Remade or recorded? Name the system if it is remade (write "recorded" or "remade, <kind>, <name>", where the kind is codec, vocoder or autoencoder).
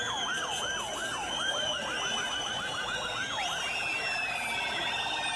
recorded